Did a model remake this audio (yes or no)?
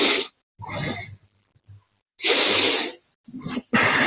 no